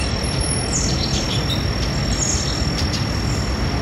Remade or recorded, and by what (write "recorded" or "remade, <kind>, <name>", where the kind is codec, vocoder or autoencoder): recorded